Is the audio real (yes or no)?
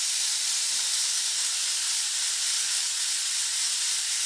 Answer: yes